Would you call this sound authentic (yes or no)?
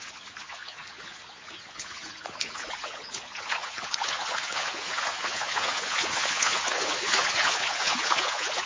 no